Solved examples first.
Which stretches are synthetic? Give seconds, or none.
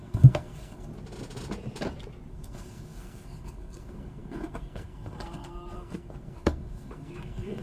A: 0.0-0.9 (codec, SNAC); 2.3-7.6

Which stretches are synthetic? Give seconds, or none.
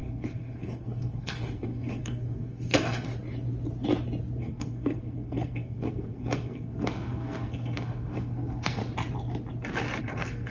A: 0.0-3.1 (codec, SNAC); 4.4-8.8; 10.0-10.5